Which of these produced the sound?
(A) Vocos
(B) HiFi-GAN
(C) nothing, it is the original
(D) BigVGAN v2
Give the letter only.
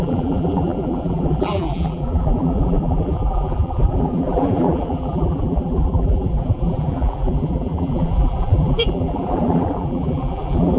D